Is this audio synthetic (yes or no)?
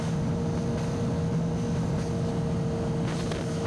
no